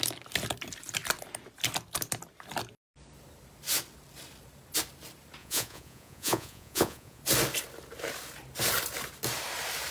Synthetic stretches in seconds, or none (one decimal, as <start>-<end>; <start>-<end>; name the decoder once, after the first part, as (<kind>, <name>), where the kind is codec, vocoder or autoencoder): 5.4-7.2 (vocoder, Vocos)